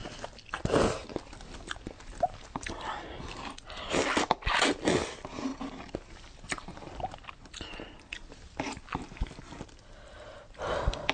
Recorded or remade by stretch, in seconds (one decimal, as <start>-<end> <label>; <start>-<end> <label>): 0.0-11.1 recorded